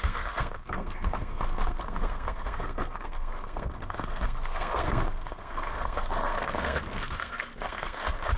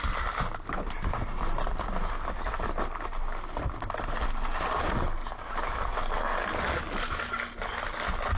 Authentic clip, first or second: second